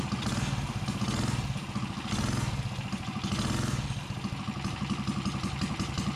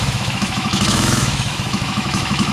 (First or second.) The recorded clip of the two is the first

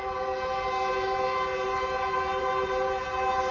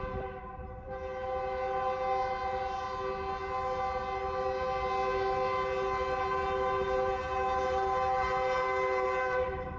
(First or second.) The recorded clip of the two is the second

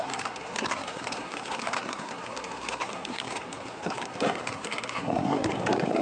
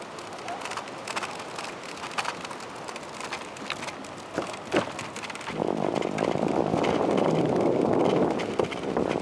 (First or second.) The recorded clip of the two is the second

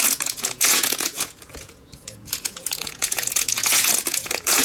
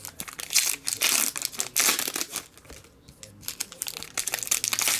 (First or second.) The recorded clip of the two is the second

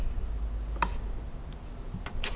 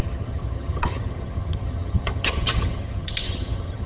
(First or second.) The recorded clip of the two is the first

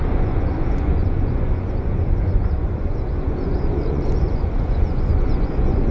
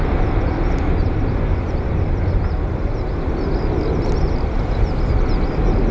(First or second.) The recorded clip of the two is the second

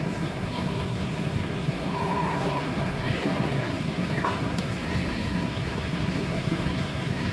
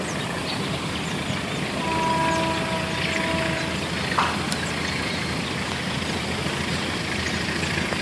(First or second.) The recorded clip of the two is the second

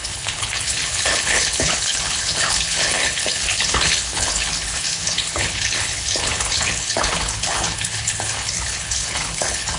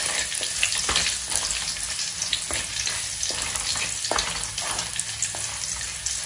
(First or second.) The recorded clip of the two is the second